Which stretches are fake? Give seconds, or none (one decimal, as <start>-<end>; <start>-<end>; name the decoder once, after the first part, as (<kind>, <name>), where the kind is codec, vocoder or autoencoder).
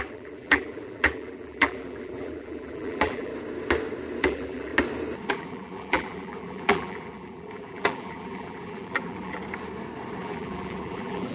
0.0-3.3 (vocoder, BigVGAN v2); 4.2-4.7; 5.3-9.4; 10.2-11.3